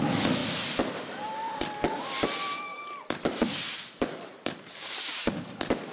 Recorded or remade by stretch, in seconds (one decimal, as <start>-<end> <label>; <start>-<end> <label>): 0.0-2.7 recorded; 2.7-4.7 remade; 4.7-5.9 recorded